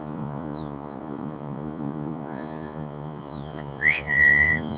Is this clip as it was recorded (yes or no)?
no